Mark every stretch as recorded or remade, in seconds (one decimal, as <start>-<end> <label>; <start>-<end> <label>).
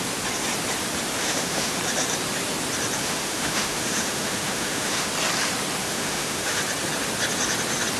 0.0-1.2 recorded; 1.2-1.8 remade; 1.8-3.0 recorded; 3.0-5.1 remade; 5.1-5.8 recorded; 5.8-6.6 remade; 6.6-8.0 recorded